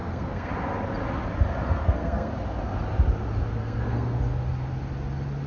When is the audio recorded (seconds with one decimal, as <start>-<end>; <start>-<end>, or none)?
0.5-1.8; 2.3-3.6; 4.2-5.5